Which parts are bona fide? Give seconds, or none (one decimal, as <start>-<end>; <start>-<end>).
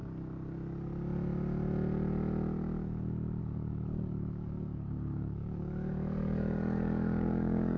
0.0-3.4